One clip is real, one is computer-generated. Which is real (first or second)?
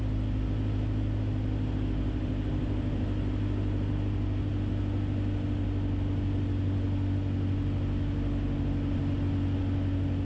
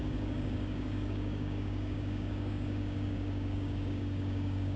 first